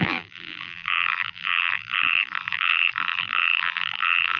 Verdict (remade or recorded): remade